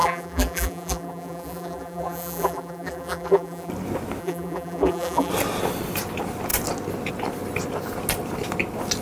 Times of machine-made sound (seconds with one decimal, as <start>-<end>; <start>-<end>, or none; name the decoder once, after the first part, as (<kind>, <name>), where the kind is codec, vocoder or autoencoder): 0.0-3.7 (vocoder, BigVGAN v2); 4.2-5.3